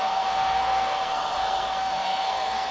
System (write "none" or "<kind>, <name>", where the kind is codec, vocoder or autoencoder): codec, SNAC